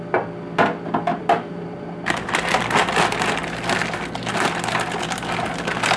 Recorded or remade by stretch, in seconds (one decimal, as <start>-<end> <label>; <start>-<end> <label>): 0.0-1.2 recorded; 1.2-2.6 remade; 2.6-6.0 recorded